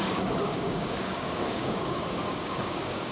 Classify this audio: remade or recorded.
remade